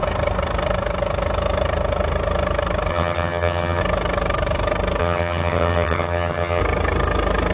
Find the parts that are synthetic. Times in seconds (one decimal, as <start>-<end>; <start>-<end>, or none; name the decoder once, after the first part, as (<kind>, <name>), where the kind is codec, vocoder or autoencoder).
2.9-3.8 (vocoder, HiFi-GAN); 5.0-6.6